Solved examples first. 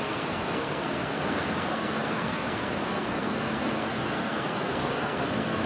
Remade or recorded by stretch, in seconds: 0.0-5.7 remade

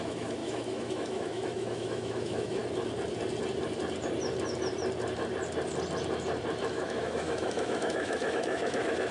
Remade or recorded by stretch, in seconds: 0.0-2.6 remade; 2.6-6.6 recorded; 6.6-9.1 remade

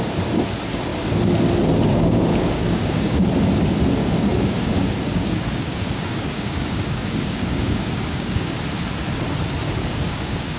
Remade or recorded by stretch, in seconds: 0.0-1.9 recorded; 1.9-3.2 remade; 3.2-4.0 recorded; 4.0-8.5 remade; 8.5-9.8 recorded; 9.8-10.6 remade